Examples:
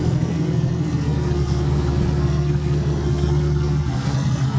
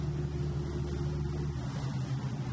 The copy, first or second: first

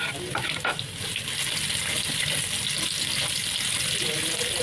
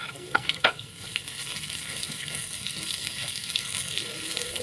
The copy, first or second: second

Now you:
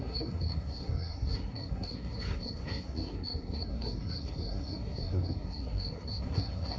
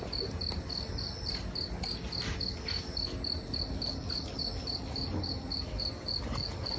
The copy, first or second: first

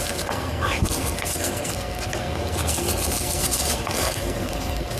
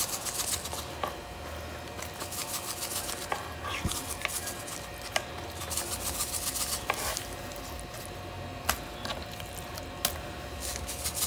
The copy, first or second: first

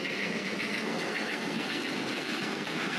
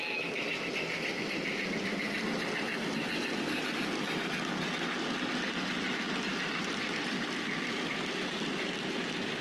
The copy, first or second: first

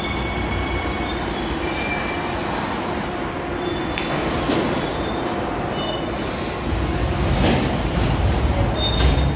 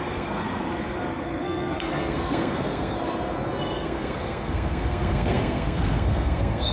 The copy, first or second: second